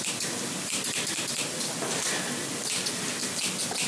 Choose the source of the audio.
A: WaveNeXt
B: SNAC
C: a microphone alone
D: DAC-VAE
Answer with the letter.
C